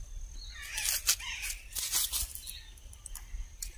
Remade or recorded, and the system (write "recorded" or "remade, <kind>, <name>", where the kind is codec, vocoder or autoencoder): recorded